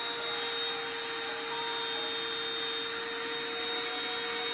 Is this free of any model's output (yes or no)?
yes